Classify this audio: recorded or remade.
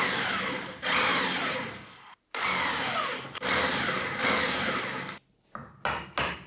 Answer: recorded